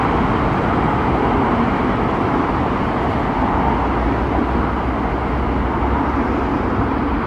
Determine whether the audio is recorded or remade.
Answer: recorded